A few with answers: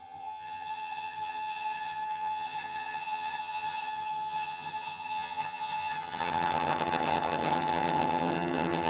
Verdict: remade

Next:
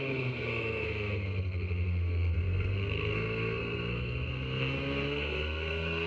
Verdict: remade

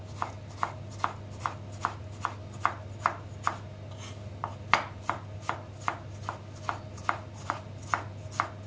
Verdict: recorded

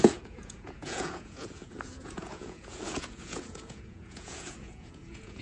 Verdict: remade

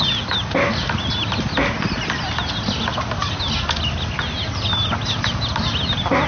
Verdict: recorded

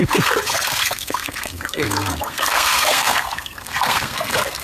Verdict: remade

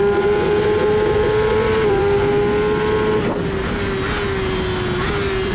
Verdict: recorded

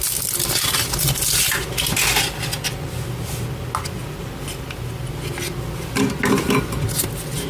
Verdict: recorded